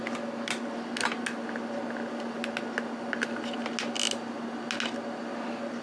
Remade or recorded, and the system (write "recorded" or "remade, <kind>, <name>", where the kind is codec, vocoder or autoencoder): recorded